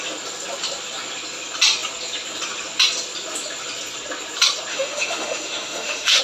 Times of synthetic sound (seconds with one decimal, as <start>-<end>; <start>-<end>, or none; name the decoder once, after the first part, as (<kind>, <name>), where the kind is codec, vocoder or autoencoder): 4.7-6.2 (autoencoder, DAC-VAE)